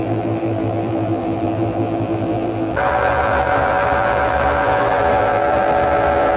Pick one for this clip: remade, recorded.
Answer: remade